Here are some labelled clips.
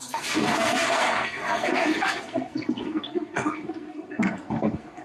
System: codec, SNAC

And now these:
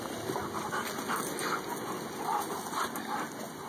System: none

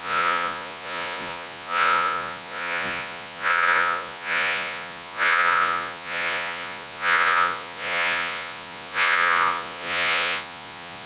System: vocoder, Vocos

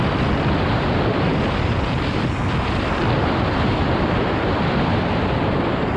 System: vocoder, BigVGAN v2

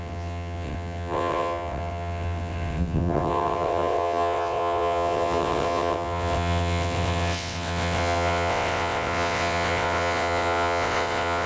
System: vocoder, WaveNeXt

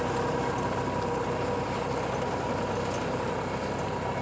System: none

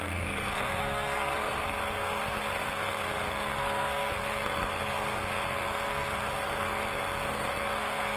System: codec, SNAC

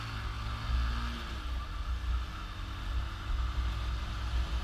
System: none